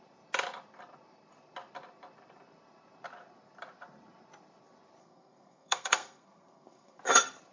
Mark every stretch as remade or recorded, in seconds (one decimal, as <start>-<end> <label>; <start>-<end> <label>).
0.0-5.0 recorded; 5.0-7.0 remade; 7.0-7.5 recorded